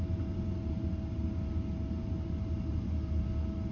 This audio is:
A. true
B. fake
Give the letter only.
A